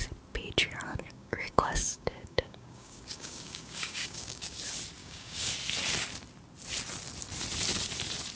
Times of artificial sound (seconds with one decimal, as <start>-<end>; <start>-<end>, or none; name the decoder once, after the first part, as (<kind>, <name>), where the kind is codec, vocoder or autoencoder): 0.9-4.6 (codec, DAC); 5.0-5.5